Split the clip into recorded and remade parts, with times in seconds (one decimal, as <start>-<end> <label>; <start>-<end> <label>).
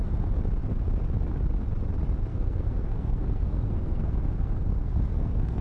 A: 0.0-2.3 recorded; 2.3-5.6 remade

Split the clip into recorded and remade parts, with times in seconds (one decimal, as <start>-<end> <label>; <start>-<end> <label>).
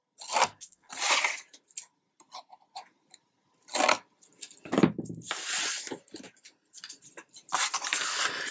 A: 0.0-0.4 recorded; 0.4-0.9 remade; 0.9-8.5 recorded